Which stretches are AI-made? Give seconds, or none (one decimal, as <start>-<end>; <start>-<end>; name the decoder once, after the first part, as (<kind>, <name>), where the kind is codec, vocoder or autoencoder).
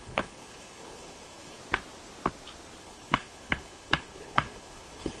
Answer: 0.0-1.6 (codec, HILCodec); 2.8-5.2